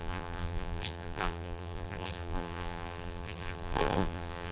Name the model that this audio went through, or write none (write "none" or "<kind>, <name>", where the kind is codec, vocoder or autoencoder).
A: vocoder, BigVGAN v2